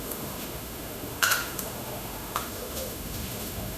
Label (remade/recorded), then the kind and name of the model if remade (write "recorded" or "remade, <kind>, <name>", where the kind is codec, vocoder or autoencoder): remade, autoencoder, DAC-VAE